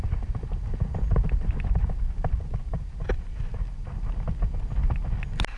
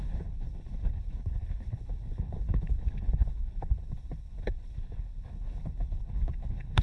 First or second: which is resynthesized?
second